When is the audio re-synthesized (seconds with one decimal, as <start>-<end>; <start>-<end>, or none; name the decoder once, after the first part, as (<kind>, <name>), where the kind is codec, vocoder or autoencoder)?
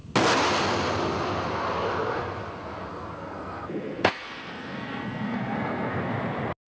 2.9-6.1 (codec, SNAC)